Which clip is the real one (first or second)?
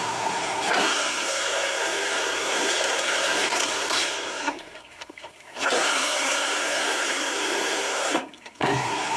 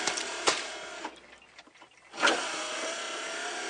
second